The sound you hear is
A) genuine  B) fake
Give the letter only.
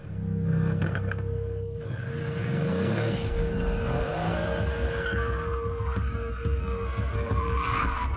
B